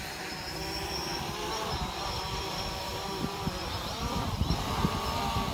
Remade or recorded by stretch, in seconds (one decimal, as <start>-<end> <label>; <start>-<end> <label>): 0.0-1.1 recorded; 1.1-3.3 remade; 3.3-5.5 recorded